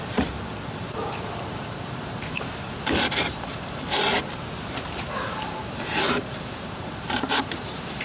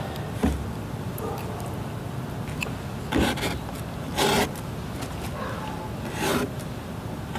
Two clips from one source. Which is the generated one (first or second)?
first